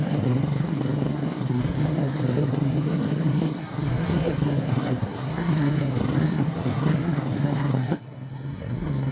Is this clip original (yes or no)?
no